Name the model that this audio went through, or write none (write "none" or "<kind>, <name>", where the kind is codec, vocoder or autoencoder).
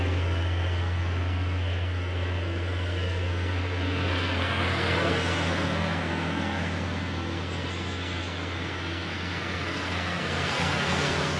codec, SNAC